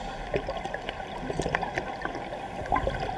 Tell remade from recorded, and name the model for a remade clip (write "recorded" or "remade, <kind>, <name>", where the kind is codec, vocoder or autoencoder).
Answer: recorded